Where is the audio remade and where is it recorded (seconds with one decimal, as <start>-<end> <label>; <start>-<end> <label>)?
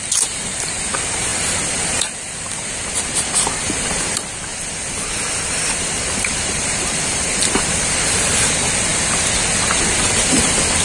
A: 0.0-4.5 recorded; 4.5-8.2 remade; 8.2-10.8 recorded